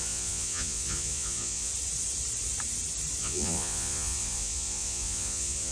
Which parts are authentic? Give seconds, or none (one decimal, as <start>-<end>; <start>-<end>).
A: 1.7-3.2